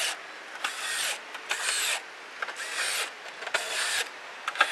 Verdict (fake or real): real